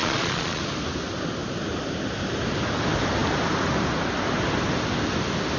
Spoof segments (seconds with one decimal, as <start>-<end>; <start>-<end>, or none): 0.0-0.6